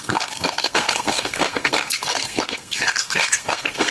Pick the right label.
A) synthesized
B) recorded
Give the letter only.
A